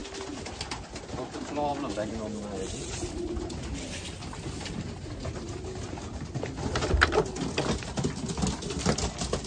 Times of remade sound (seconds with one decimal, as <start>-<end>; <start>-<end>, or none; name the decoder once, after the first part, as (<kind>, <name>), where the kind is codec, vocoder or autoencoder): none